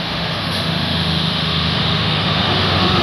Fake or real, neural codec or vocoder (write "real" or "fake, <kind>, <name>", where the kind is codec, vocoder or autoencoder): fake, autoencoder, DAC-VAE